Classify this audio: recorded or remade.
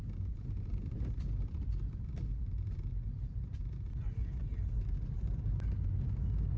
remade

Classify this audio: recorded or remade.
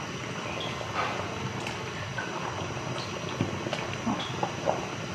recorded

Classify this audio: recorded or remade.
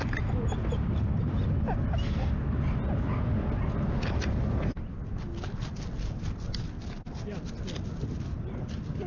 recorded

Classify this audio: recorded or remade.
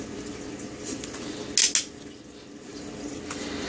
recorded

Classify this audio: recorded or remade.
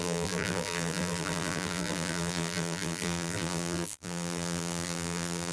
remade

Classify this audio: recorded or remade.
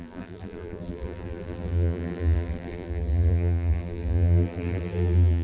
remade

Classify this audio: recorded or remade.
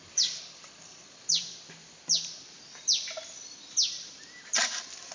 remade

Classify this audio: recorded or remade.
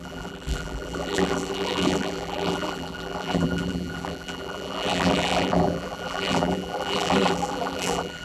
remade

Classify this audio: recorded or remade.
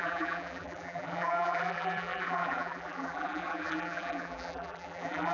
remade